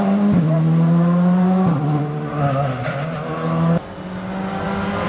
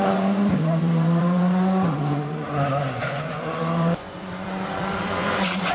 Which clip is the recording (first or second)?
first